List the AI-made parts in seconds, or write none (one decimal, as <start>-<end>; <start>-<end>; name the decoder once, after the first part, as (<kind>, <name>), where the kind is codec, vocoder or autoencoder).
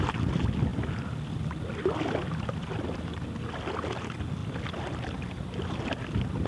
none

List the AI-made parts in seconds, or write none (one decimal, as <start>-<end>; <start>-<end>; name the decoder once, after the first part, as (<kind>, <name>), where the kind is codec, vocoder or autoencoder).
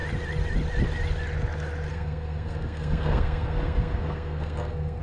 1.9-5.0 (codec, SNAC)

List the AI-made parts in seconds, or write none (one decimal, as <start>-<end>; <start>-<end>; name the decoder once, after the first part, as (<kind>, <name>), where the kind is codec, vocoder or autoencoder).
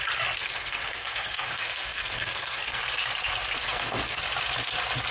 0.4-2.8 (codec, SNAC); 3.6-4.2